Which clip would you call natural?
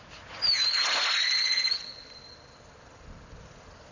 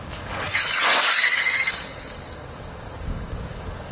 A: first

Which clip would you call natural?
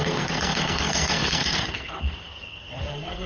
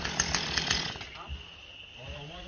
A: second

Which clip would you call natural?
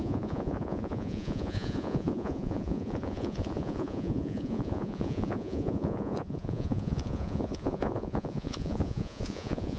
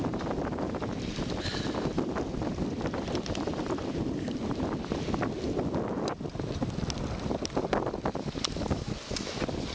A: second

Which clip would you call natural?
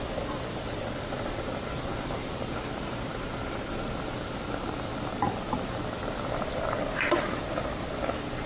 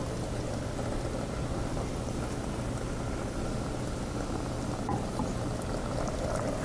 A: second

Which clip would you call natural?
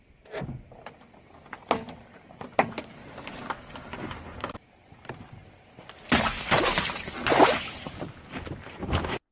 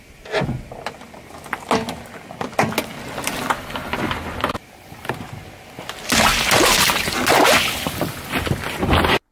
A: second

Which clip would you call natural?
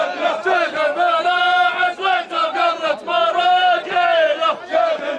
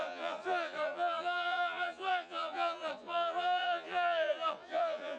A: first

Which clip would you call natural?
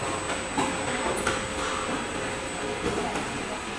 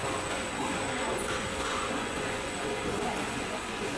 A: first